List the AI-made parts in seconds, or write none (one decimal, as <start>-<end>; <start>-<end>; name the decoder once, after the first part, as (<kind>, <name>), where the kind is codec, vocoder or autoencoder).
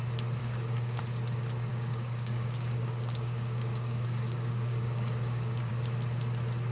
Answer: 0.4-1.0 (codec, DAC); 1.7-5.7